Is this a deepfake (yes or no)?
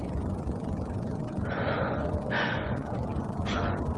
yes